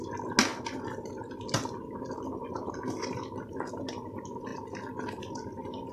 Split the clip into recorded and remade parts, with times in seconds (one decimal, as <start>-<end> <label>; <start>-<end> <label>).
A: 0.0-5.9 recorded